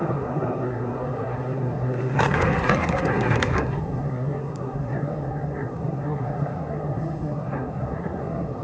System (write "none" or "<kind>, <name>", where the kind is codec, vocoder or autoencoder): codec, SNAC